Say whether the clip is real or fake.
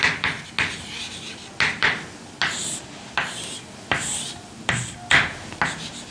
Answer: real